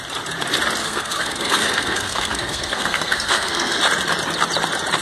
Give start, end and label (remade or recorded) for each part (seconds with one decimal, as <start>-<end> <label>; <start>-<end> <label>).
0.0-0.8 recorded; 0.8-3.8 remade; 3.8-5.0 recorded